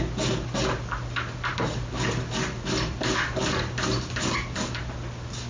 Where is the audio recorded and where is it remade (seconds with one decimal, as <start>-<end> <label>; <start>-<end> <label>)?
0.0-5.5 recorded